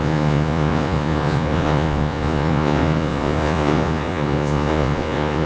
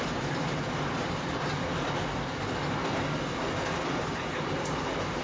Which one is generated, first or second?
first